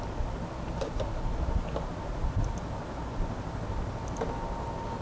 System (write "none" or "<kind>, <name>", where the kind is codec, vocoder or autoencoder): none